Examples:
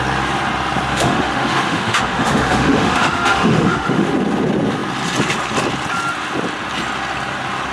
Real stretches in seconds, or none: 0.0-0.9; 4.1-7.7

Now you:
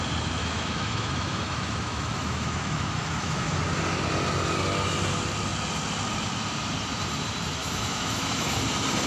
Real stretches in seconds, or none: 0.0-0.4; 3.6-7.6; 8.6-9.1

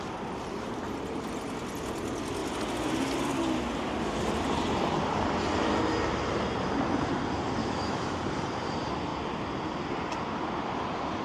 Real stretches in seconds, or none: 0.0-7.6; 8.2-11.2

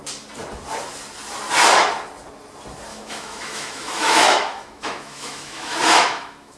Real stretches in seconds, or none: 0.0-2.9